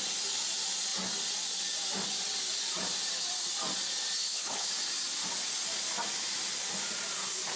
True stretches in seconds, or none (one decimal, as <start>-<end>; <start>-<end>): 0.0-4.2; 4.7-7.6